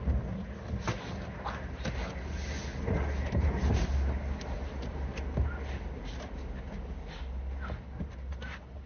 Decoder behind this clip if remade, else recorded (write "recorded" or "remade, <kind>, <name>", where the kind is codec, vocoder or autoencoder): recorded